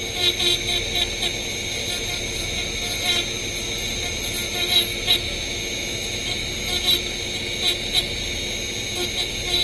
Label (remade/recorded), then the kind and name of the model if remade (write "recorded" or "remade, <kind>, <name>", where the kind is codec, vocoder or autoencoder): recorded